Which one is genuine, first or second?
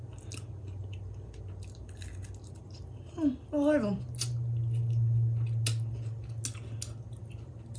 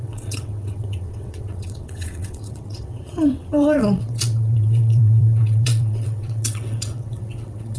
first